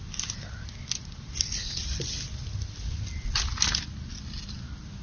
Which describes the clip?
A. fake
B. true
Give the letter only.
B